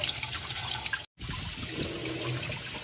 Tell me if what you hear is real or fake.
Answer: real